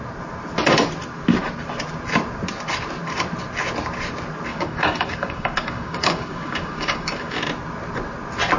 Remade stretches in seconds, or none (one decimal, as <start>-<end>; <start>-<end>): 4.5-7.4